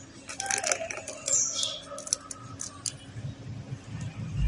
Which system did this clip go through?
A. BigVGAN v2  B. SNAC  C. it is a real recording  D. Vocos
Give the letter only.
C